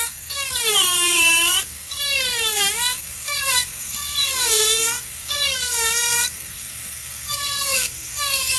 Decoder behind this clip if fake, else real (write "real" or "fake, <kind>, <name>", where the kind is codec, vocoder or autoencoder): fake, codec, SNAC